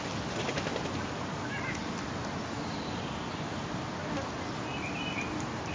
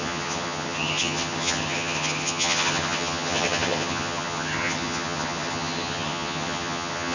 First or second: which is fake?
second